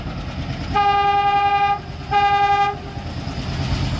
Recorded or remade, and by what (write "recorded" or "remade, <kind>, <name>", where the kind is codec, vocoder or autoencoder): recorded